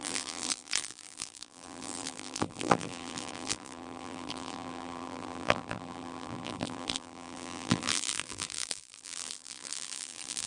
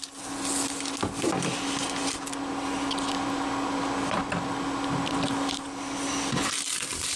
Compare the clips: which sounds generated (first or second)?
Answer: first